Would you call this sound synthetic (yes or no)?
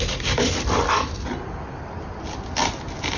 no